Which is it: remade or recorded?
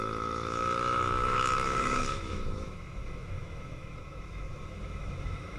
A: remade